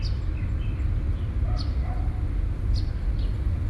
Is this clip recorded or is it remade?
recorded